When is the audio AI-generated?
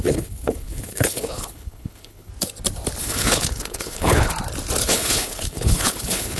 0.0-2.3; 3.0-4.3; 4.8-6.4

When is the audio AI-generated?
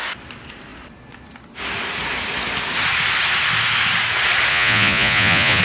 4.5-5.6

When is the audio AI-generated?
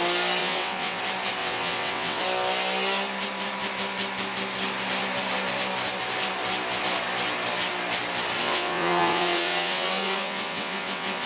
0.4-1.0; 1.4-2.2; 8.4-11.3